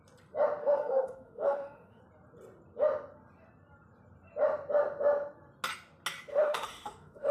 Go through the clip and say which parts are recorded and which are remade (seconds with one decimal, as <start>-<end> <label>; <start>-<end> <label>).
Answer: 0.0-0.6 recorded; 0.6-2.0 remade; 2.0-6.3 recorded; 6.3-7.3 remade